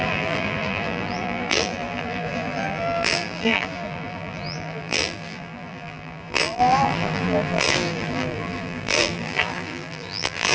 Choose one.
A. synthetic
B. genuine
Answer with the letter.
A